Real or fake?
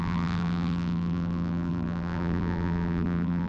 fake